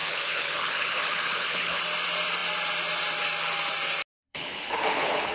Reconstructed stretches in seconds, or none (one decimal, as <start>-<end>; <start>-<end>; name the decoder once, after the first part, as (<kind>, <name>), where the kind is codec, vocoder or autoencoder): 0.0-1.8 (codec, HILCodec); 4.3-5.3